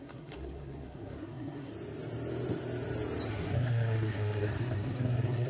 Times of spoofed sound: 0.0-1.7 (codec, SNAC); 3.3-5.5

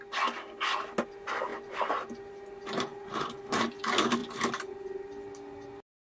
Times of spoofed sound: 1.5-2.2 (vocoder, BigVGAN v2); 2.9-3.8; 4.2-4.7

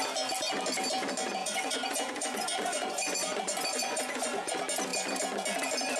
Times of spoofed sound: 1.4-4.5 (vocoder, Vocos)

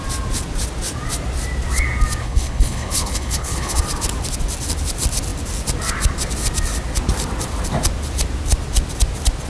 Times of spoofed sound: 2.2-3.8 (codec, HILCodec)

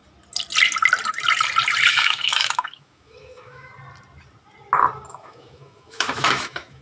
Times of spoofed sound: 1.9-3.7 (autoencoder, DAC-VAE); 5.1-6.8

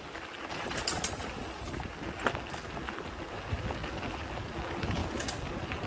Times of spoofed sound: none

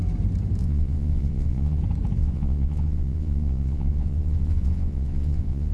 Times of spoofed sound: 0.6-1.8 (vocoder, Vocos); 2.2-5.7

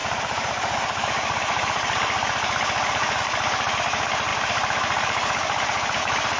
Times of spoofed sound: 0.0-3.2 (vocoder, BigVGAN v2); 4.3-6.0